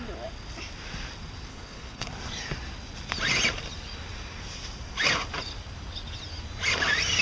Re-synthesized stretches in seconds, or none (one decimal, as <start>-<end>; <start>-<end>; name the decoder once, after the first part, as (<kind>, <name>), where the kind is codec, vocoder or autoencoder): 1.5-2.1 (codec, HILCodec)